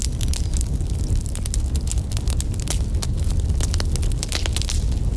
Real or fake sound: real